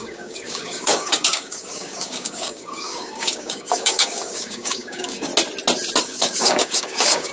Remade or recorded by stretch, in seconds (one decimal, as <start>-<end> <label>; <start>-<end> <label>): 0.0-5.3 remade; 5.3-6.0 recorded; 6.0-7.3 remade